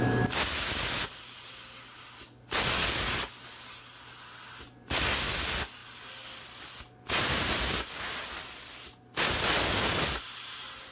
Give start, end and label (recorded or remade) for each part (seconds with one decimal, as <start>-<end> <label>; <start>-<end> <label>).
0.0-10.9 recorded